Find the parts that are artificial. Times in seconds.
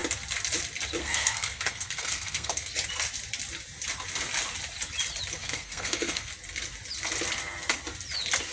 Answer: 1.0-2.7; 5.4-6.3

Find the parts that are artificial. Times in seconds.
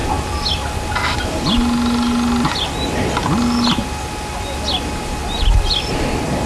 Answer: none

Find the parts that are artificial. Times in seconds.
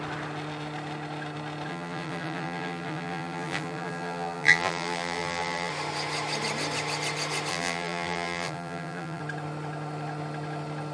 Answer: 1.7-5.7; 7.5-9.2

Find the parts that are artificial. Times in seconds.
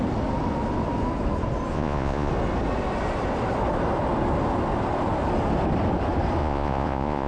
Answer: 1.7-2.3; 6.4-7.3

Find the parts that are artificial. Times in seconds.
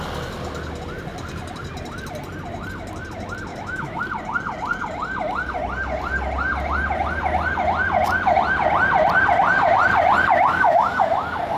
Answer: 3.5-4.0; 10.5-11.0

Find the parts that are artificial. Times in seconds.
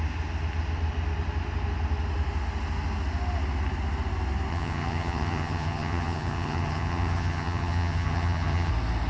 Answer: 4.5-8.7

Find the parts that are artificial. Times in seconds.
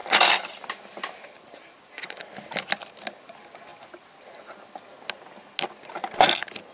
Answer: none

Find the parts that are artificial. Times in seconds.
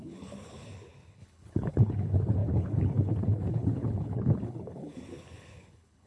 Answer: 0.0-6.1